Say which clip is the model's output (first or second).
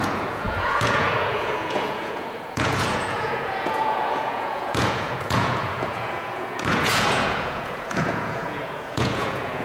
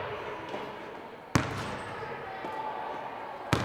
first